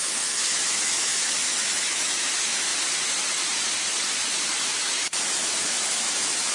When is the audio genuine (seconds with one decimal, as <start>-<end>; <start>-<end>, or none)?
2.7-4.8